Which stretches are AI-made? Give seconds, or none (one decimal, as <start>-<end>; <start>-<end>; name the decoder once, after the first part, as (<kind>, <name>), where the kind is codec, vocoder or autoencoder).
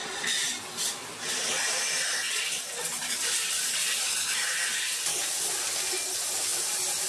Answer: 0.0-4.3 (vocoder, BigVGAN v2); 5.2-6.0